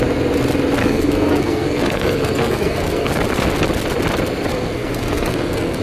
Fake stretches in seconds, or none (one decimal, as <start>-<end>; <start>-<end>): 0.8-3.2; 4.5-5.8